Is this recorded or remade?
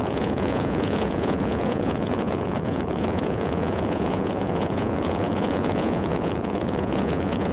remade